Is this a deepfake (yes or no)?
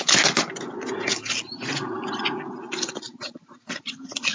no